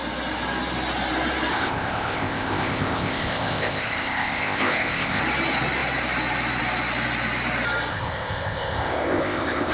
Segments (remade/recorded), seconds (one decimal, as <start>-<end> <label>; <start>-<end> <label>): 0.0-1.5 recorded; 1.5-5.2 remade; 5.2-7.9 recorded; 7.9-9.7 remade